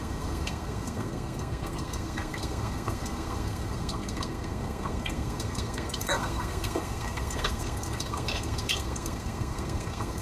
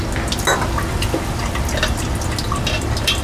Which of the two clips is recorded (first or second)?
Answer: second